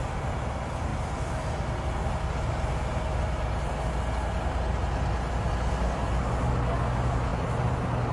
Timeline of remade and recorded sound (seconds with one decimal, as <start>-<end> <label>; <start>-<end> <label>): 0.0-8.1 recorded